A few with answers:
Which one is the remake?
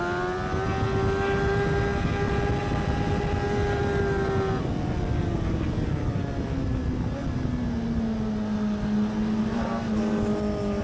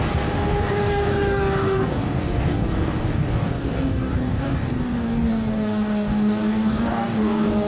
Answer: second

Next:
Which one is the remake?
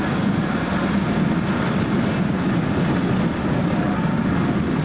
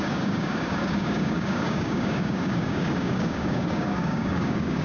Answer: second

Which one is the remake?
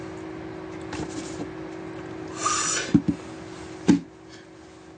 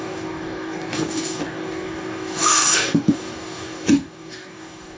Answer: second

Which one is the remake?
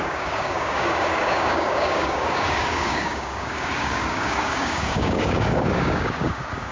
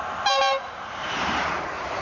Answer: first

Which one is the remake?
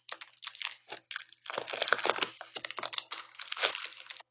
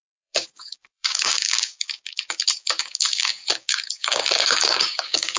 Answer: second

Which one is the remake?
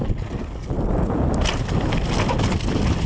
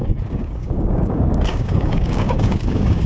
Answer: second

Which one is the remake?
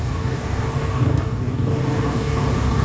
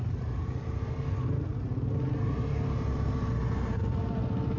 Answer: first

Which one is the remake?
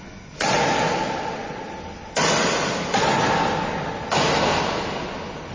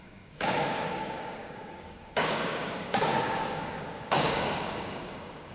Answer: second